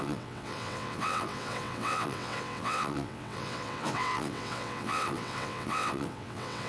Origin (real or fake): fake